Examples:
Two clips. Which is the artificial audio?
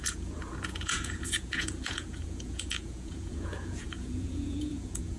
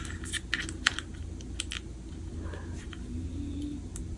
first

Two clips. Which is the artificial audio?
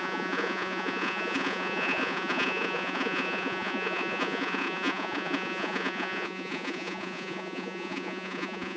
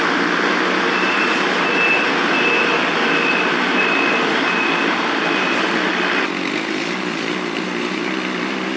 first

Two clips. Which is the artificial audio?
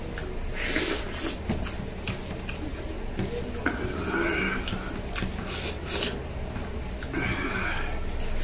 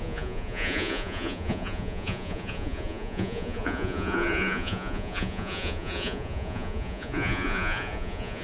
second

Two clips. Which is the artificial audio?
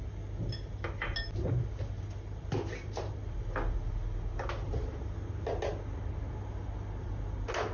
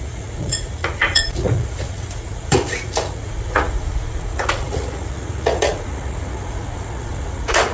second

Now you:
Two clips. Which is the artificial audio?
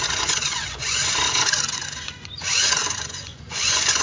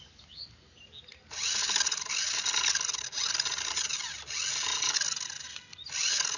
first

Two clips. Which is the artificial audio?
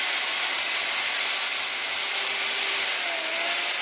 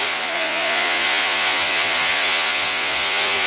second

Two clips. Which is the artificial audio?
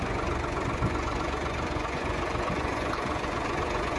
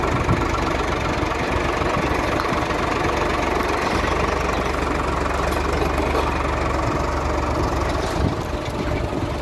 first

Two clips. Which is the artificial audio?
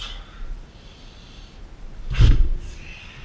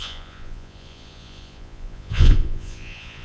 second